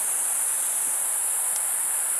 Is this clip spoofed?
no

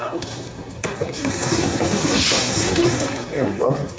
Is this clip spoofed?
yes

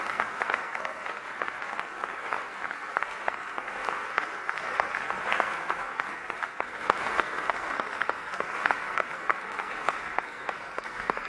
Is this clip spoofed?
yes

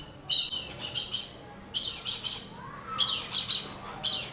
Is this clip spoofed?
no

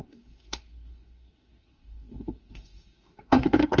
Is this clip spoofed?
yes